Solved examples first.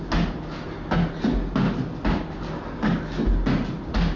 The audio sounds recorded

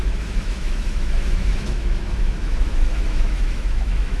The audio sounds remade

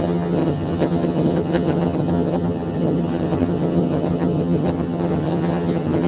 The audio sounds remade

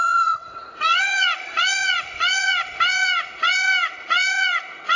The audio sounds remade